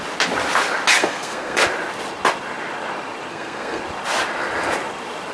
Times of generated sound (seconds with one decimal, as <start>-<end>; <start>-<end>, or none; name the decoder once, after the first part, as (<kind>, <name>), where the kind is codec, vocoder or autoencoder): 1.0-1.6 (codec, SNAC); 3.3-3.8